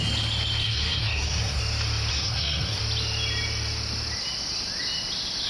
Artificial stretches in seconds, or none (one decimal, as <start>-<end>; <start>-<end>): 0.6-1.6; 2.1-2.8

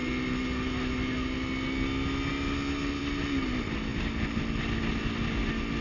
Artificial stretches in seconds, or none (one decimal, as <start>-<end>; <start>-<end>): none

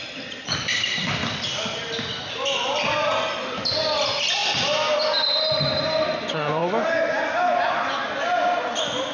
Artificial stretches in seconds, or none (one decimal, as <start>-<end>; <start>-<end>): none

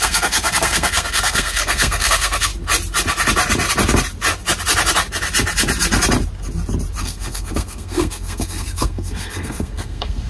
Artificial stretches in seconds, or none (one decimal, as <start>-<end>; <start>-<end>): 0.0-2.5; 7.0-10.3